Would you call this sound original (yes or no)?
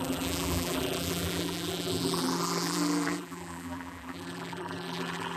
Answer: no